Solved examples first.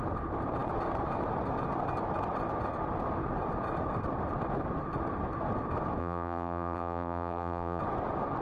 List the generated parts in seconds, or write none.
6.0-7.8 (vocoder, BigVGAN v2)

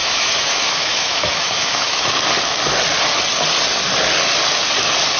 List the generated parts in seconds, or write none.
0.0-2.3 (autoencoder, DAC-VAE)

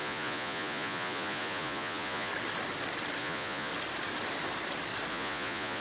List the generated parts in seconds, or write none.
0.0-2.3 (vocoder, Vocos); 3.2-3.7; 5.1-5.8

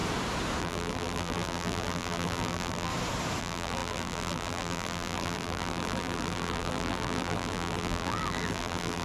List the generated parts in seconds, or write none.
0.6-2.9 (vocoder, BigVGAN v2); 3.4-9.0

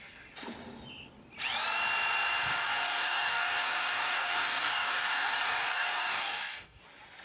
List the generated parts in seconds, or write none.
2.5-6.8 (codec, DAC)

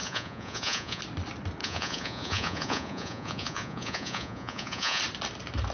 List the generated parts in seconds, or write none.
0.0-1.0 (vocoder, Vocos); 1.6-5.0

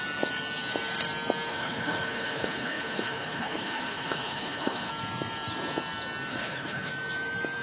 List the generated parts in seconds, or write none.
1.5-4.9 (codec, HILCodec); 6.3-6.9